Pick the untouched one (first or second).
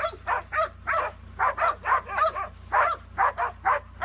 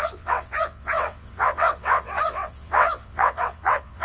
first